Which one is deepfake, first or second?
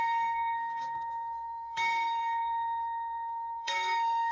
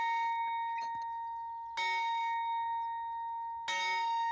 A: first